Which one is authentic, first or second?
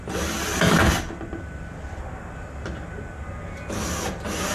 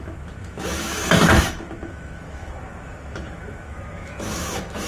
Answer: first